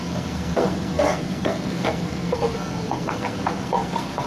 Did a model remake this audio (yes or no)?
yes